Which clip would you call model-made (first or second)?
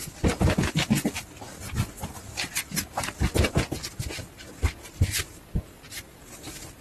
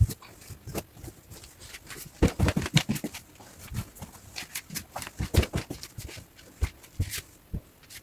second